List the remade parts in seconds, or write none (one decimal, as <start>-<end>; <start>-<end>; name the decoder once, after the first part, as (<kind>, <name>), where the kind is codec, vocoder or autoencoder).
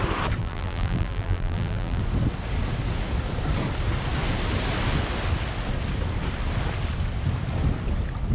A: 0.4-2.0 (vocoder, BigVGAN v2)